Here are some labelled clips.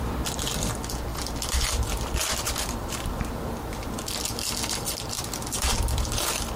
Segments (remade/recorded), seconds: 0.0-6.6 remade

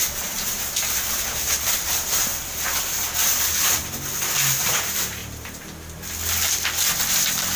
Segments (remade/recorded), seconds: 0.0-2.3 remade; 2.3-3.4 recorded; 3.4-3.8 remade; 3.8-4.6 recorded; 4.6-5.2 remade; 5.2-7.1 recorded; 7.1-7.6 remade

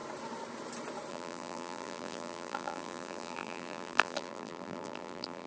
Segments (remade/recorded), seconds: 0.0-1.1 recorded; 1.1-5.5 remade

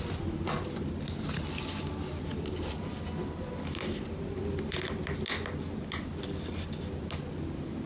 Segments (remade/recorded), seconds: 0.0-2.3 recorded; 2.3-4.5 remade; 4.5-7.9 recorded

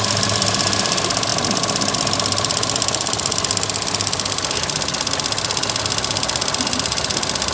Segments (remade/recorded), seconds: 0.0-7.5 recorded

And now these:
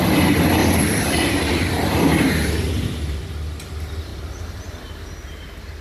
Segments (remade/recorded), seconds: 0.0-0.6 recorded; 0.6-3.2 remade; 3.2-4.1 recorded; 4.1-4.6 remade; 4.6-5.8 recorded

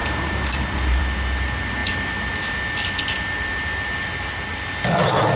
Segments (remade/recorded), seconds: 0.0-1.0 remade; 1.0-5.4 recorded